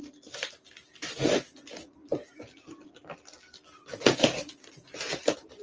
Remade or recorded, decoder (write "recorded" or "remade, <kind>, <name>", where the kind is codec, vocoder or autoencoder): recorded